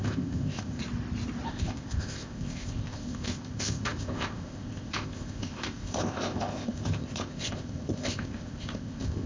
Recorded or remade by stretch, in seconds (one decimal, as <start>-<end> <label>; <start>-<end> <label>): 0.0-0.8 remade; 0.8-1.5 recorded; 1.5-9.3 remade